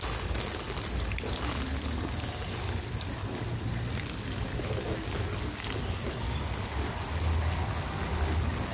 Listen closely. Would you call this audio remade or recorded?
recorded